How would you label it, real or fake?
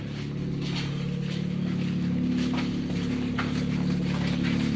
real